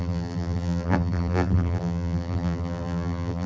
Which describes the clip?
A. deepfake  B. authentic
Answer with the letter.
A